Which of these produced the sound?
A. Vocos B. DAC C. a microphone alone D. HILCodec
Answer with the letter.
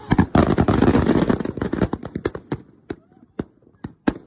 C